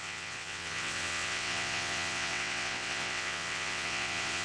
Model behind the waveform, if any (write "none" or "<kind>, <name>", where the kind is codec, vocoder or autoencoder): vocoder, WaveNeXt